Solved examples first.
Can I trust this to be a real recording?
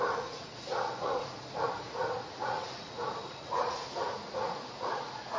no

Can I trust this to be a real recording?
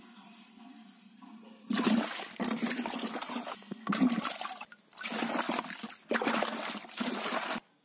no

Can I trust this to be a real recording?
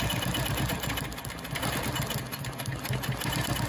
yes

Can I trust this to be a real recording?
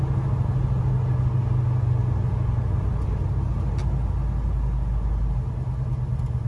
yes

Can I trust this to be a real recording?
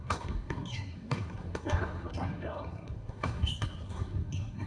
no